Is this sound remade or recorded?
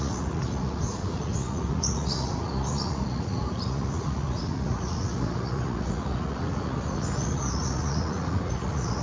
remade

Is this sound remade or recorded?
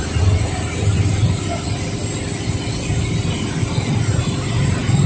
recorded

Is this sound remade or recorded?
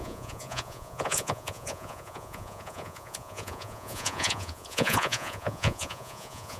remade